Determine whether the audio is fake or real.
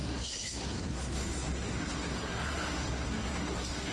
fake